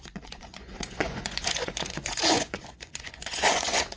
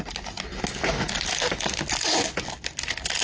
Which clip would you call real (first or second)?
second